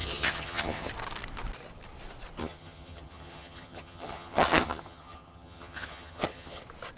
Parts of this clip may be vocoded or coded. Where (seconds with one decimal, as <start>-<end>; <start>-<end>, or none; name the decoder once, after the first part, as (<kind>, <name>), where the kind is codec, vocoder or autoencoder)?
0.0-0.9 (vocoder, HiFi-GAN); 2.4-6.6